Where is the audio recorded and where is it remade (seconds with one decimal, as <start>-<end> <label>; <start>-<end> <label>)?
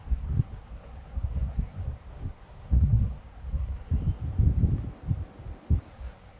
0.0-4.0 remade; 4.0-5.9 recorded; 5.9-6.4 remade